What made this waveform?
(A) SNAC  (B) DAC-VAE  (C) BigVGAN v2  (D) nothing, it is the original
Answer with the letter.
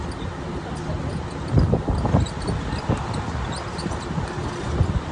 D